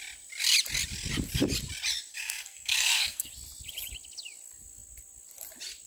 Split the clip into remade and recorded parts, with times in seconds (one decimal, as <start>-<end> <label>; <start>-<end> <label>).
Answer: 0.0-2.1 recorded; 2.1-3.3 remade; 3.3-5.9 recorded